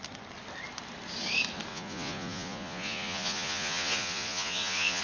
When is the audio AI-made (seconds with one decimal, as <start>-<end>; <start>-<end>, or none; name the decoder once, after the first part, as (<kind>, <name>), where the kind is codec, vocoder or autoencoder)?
1.7-5.0 (vocoder, Vocos)